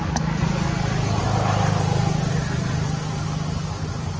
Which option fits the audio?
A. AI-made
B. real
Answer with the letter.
B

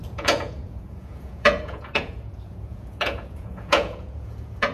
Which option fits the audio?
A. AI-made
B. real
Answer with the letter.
A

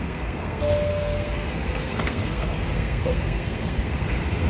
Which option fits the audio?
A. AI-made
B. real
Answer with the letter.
A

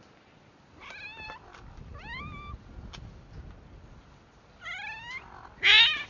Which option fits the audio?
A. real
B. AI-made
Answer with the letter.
A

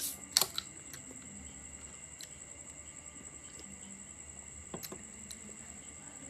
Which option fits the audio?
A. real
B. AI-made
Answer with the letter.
A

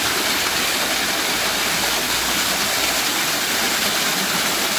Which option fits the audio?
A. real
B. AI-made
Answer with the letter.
A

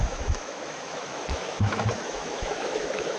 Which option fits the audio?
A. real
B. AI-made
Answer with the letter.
B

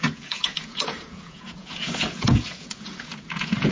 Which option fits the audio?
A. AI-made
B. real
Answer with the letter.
A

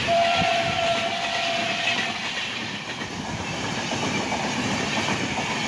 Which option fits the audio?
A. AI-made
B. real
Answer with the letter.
A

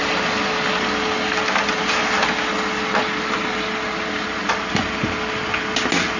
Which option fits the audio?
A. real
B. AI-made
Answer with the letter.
A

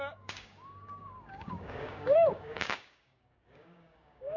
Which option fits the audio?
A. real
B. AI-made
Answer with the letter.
B